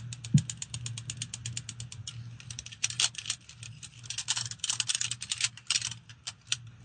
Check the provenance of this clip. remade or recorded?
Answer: recorded